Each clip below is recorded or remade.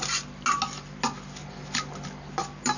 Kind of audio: recorded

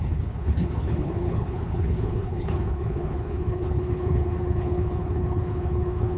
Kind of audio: remade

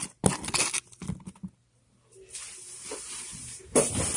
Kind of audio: recorded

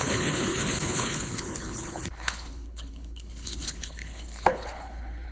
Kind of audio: remade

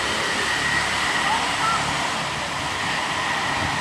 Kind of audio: recorded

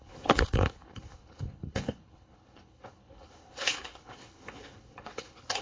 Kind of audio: remade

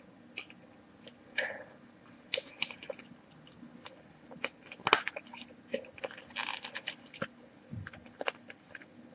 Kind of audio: recorded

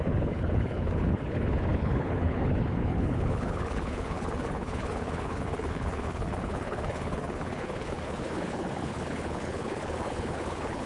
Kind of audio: remade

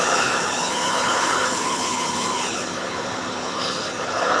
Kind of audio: remade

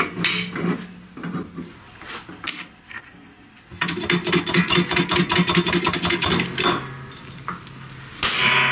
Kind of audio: recorded